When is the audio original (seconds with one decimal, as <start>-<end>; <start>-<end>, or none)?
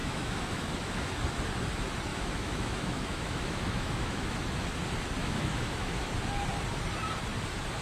1.1-2.1; 4.4-5.2; 6.1-7.8